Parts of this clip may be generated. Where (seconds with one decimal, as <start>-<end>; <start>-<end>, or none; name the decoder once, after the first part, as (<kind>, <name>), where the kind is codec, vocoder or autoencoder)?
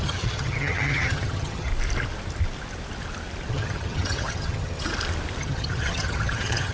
0.0-1.7 (vocoder, HiFi-GAN); 3.5-4.9; 5.4-6.7